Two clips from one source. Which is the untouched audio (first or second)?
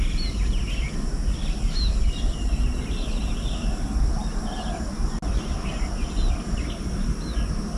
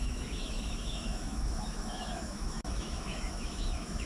first